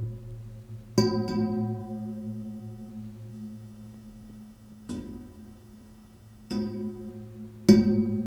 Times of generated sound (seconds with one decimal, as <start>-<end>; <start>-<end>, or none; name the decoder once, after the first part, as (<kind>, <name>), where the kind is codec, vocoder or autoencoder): 1.8-2.9 (autoencoder, DAC-VAE); 3.3-7.1